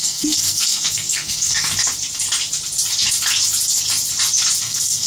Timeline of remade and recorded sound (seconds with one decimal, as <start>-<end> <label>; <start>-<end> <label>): 0.0-1.7 remade; 1.7-4.6 recorded; 4.6-5.1 remade